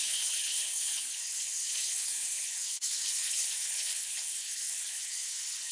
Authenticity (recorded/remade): remade